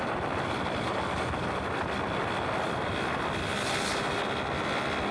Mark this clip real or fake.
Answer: real